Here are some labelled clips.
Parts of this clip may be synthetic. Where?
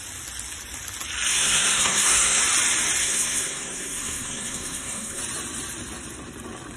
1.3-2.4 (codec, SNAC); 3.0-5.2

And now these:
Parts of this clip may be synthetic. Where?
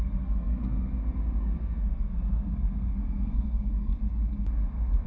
0.0-0.9 (codec, SNAC); 1.4-3.9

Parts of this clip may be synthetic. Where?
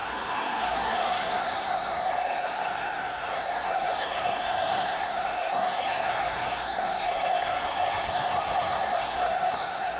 0.0-10.0 (codec, SNAC)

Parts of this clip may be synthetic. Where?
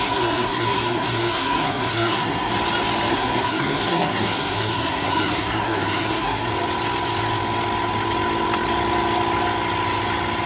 0.0-2.5 (codec, SNAC); 3.1-6.5